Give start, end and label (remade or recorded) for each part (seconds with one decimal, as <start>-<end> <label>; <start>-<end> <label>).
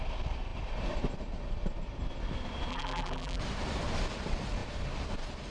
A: 0.0-2.7 recorded; 2.7-3.4 remade; 3.4-5.5 recorded